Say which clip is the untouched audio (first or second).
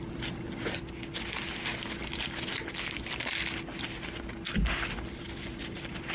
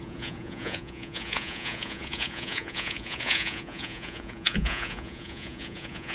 first